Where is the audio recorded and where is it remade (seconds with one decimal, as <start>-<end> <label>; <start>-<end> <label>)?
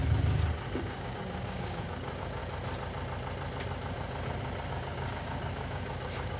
0.0-0.8 recorded; 0.8-2.4 remade; 2.4-4.7 recorded; 4.7-6.4 remade